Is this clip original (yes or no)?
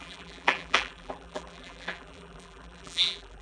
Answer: no